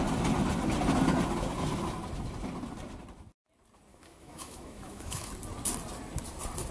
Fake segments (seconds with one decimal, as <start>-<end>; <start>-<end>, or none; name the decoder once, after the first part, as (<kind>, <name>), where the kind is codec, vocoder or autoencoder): 3.9-5.3 (autoencoder, DAC-VAE)